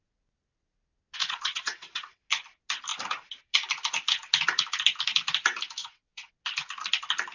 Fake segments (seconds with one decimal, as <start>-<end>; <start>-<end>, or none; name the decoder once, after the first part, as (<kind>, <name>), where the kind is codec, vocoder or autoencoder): 1.2-2.2 (vocoder, WaveNeXt); 5.8-6.3